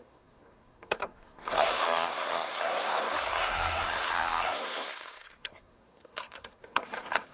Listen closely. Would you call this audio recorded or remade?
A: remade